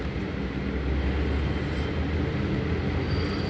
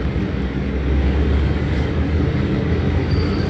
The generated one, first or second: second